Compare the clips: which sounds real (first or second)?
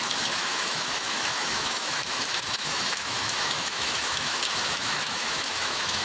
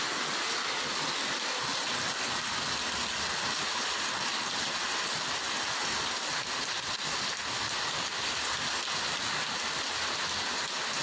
second